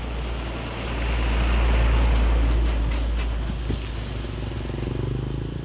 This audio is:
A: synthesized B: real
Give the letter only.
B